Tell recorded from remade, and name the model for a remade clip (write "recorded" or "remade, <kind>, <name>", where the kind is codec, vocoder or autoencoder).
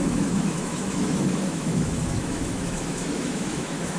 remade, autoencoder, DAC-VAE